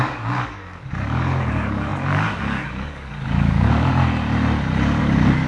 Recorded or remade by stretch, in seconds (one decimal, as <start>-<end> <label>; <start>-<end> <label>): 0.0-3.9 remade; 3.9-5.0 recorded; 5.0-5.5 remade